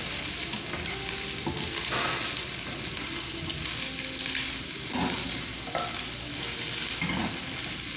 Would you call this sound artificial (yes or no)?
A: no